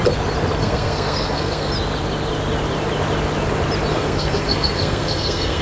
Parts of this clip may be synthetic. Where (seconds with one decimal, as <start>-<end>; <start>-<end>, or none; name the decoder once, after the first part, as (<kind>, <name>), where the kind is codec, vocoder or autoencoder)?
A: 0.6-1.7 (codec, SNAC); 3.9-5.6